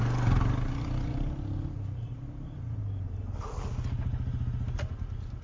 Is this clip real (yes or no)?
yes